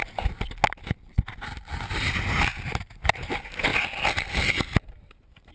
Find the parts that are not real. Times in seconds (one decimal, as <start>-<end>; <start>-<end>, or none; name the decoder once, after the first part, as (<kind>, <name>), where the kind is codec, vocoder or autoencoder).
1.9-3.7 (vocoder, BigVGAN v2); 4.9-5.5